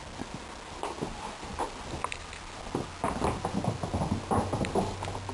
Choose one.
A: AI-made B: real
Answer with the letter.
B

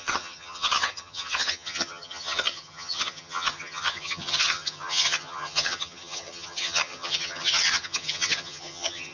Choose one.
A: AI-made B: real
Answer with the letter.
A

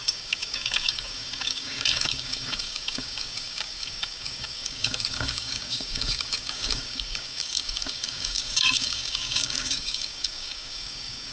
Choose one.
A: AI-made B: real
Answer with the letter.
A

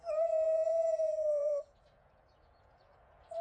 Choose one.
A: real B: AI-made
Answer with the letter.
B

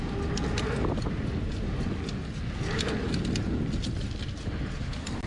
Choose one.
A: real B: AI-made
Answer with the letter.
A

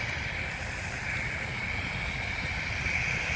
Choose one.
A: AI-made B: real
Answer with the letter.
B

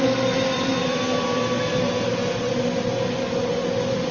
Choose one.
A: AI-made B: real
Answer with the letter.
B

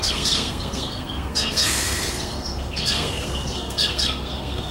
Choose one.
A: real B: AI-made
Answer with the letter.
B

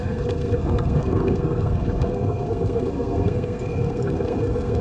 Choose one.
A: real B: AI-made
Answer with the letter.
B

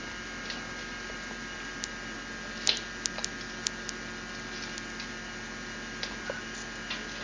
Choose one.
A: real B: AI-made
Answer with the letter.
A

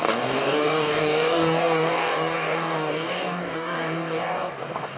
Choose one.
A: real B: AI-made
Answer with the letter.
B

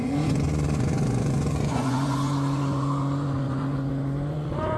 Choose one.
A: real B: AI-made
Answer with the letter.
B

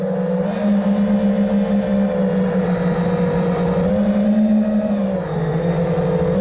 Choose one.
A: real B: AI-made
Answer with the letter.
A